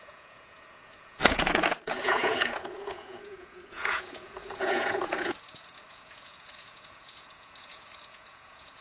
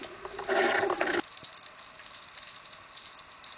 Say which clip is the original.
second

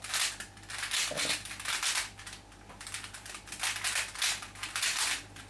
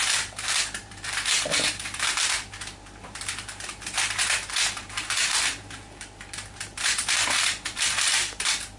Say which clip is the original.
first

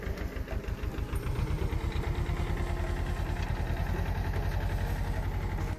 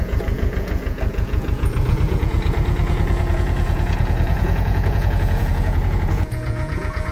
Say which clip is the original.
first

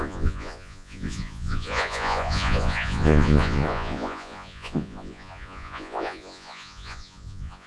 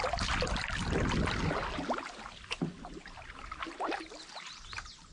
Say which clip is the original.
second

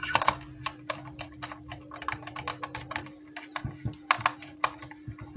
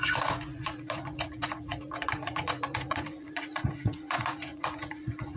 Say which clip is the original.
first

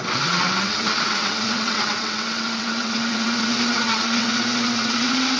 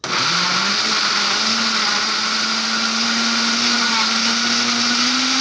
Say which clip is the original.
second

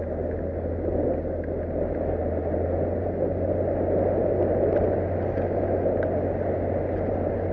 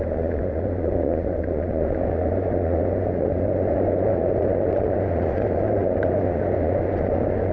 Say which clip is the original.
first